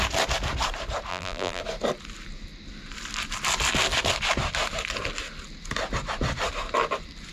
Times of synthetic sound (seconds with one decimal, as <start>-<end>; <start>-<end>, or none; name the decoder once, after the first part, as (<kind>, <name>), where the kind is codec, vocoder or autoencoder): 1.1-1.6 (vocoder, BigVGAN v2)